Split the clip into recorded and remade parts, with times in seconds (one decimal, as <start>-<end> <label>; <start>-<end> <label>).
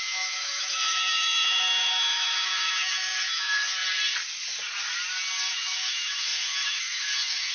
0.0-3.8 remade; 3.8-5.5 recorded; 5.5-7.5 remade